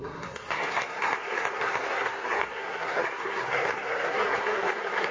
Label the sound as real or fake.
fake